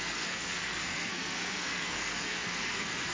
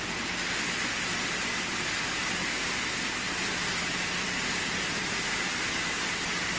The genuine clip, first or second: second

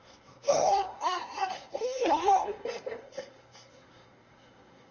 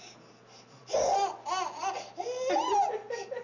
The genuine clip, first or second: second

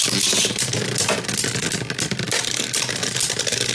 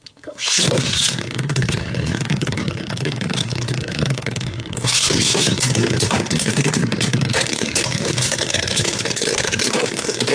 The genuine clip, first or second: first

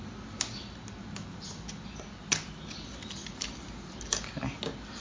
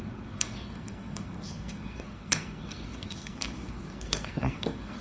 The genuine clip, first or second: first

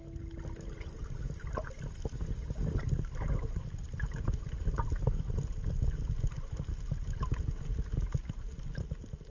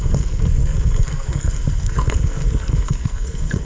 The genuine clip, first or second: first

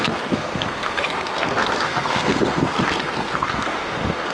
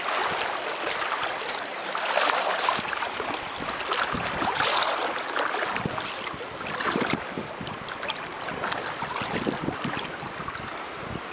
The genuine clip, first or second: second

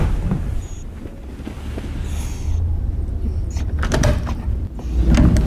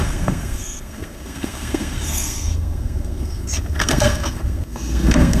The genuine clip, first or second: first